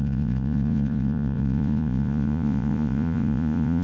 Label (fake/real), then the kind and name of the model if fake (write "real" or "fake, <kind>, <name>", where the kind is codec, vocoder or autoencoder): fake, vocoder, Vocos